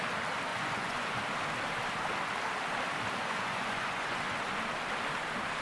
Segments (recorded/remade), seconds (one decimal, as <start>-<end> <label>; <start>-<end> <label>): 0.0-0.5 recorded; 0.5-1.2 remade; 1.2-3.2 recorded; 3.2-4.2 remade; 4.2-5.6 recorded